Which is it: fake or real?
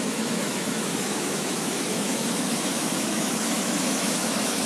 fake